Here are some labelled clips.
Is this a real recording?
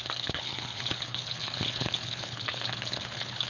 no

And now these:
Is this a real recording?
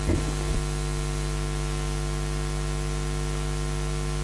yes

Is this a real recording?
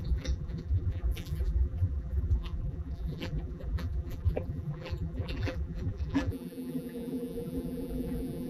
no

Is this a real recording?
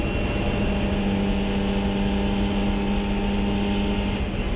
yes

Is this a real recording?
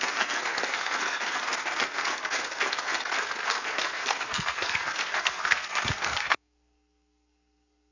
no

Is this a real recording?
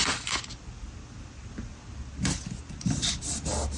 yes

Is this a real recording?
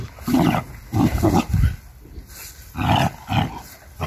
yes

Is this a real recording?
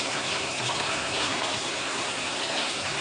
no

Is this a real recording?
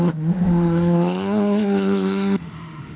no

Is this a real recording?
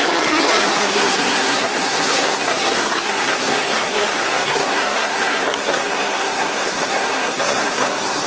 no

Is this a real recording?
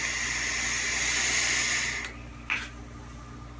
yes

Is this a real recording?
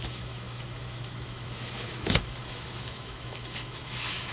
no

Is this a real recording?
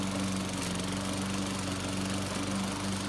yes